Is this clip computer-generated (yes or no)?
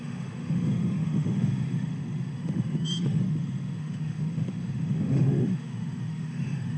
yes